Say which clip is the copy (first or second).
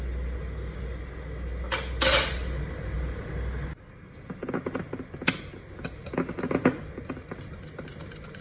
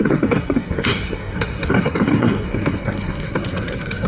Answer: second